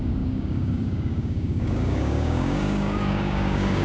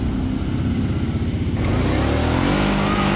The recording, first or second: second